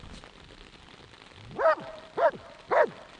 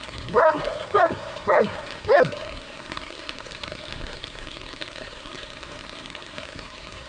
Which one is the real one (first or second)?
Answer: first